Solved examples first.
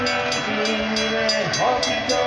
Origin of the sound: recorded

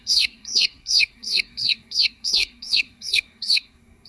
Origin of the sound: remade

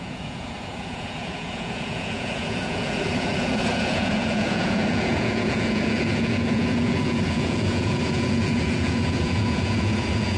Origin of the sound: remade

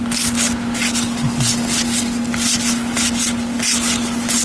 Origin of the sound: recorded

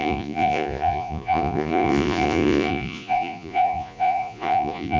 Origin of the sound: remade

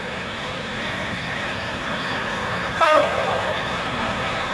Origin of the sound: remade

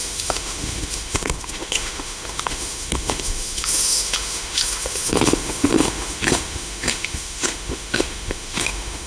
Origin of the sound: remade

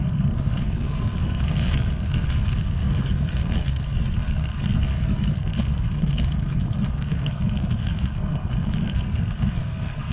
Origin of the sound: remade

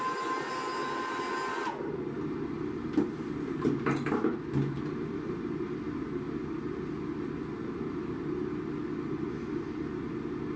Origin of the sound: recorded